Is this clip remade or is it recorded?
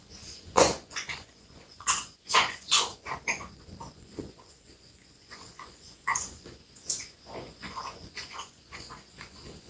remade